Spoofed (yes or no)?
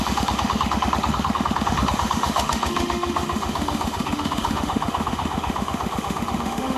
yes